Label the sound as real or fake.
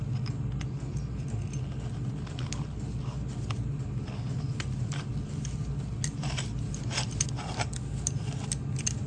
real